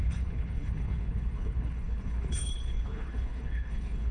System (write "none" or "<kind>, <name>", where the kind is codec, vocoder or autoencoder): codec, HILCodec